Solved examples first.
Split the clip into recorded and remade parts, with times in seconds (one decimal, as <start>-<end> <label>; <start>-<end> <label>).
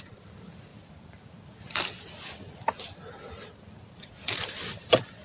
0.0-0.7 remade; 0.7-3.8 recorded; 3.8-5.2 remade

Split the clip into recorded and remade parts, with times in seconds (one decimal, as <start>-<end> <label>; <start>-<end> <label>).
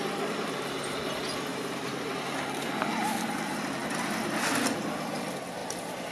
0.0-1.5 recorded; 1.5-2.2 remade; 2.2-5.6 recorded; 5.6-6.1 remade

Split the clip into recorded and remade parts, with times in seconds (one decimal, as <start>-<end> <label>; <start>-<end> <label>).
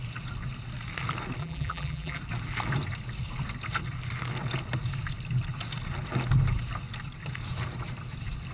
0.0-1.4 recorded; 1.4-2.2 remade; 2.2-8.5 recorded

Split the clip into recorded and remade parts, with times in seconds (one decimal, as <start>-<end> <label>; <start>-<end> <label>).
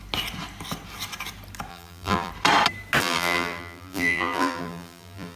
0.0-1.7 recorded; 1.7-2.3 remade; 2.3-3.0 recorded; 3.0-5.4 remade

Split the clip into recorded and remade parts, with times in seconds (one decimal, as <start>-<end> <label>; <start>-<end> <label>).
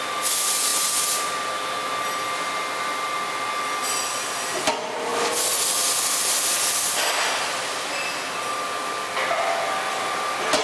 0.0-10.6 recorded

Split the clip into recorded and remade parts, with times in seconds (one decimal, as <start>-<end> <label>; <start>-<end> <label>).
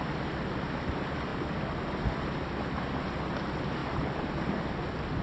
0.0-5.2 recorded